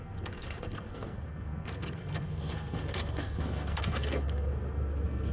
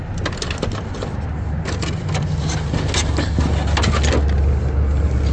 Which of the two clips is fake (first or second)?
first